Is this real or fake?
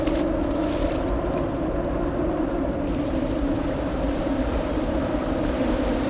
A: fake